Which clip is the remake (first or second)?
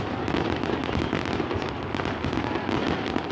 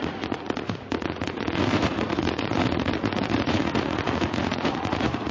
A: second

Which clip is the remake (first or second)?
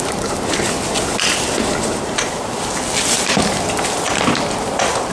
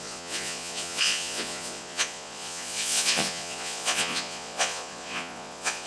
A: second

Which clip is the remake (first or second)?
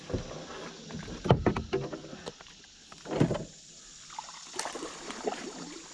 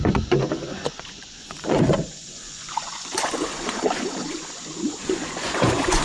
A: second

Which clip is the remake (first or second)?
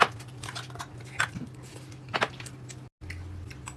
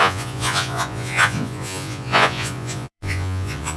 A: second